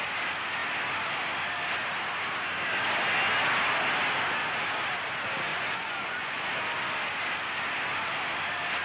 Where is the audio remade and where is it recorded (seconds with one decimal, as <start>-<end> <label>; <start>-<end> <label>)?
0.0-5.5 recorded; 5.5-6.4 remade; 6.4-8.8 recorded